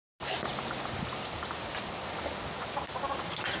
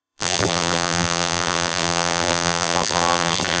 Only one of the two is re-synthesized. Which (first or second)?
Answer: second